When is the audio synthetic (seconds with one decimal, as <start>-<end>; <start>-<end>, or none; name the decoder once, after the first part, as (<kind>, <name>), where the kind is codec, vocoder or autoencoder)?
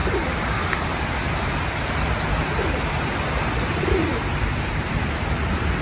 0.0-1.5 (vocoder, BigVGAN v2); 4.1-5.1